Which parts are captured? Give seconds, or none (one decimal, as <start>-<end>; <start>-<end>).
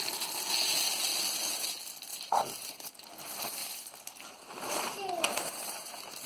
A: 0.0-2.1; 3.0-3.6